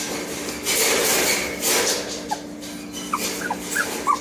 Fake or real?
real